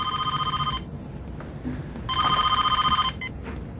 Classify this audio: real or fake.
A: real